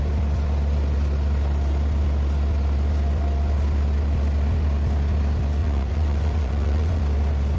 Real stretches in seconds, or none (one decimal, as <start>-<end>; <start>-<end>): 0.0-5.6; 7.0-7.6